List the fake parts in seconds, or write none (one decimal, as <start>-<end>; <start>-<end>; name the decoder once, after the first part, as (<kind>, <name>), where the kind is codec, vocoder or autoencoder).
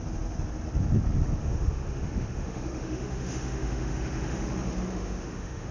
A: 1.4-4.5 (autoencoder, DAC-VAE); 4.9-5.7